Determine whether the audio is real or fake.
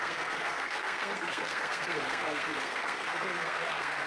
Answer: fake